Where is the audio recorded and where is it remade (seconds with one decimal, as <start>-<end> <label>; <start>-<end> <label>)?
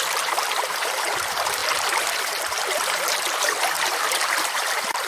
0.0-5.1 remade